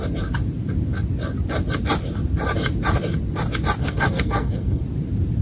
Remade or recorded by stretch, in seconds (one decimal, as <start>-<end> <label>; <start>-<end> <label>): 0.0-3.8 recorded; 3.8-4.8 remade; 4.8-5.4 recorded